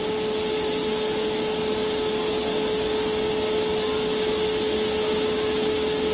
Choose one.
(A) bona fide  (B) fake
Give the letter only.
A